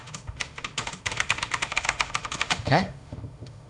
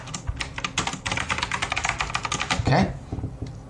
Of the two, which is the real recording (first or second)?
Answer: second